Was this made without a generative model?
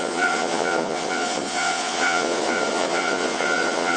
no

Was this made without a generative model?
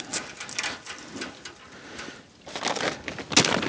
yes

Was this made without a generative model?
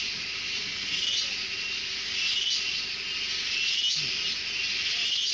yes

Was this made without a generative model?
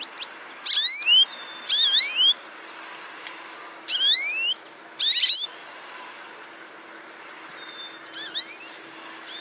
yes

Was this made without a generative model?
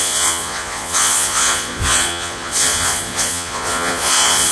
no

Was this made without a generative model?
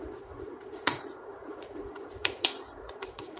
no